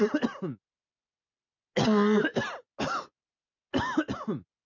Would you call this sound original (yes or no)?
yes